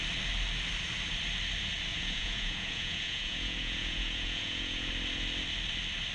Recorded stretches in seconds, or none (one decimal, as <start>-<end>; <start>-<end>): 0.0-1.9; 4.9-6.1

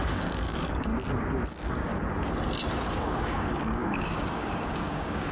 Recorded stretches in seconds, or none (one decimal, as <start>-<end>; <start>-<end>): 0.9-1.5; 1.9-3.0

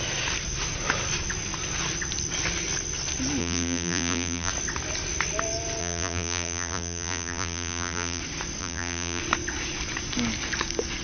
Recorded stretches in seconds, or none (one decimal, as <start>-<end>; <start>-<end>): 0.0-3.4; 4.5-5.8; 8.2-8.6; 9.2-11.0

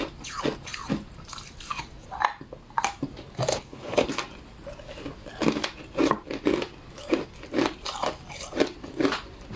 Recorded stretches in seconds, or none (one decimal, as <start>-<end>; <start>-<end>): 0.0-3.5; 4.1-9.6